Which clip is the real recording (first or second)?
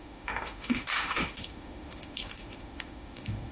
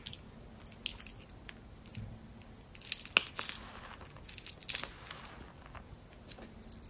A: second